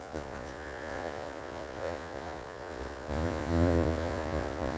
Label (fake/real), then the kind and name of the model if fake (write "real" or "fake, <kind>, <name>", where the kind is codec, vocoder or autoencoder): fake, vocoder, Vocos